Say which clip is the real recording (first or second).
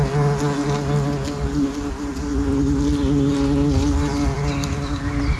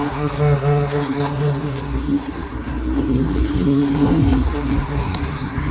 first